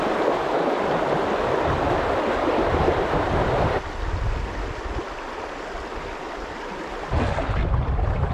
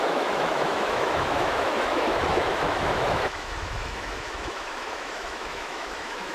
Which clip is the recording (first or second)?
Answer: first